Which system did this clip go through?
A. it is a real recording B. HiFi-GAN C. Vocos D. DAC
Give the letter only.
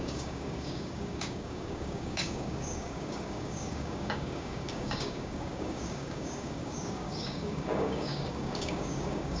D